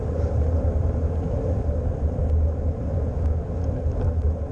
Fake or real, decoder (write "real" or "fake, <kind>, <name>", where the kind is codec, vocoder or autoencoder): real